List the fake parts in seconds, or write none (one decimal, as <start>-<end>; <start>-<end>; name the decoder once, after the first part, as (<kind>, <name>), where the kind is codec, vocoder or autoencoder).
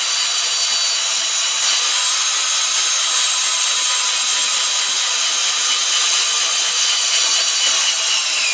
6.2-7.4 (vocoder, Vocos)